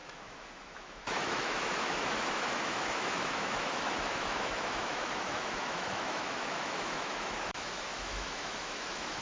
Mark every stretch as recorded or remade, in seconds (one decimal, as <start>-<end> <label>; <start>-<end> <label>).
0.0-9.2 remade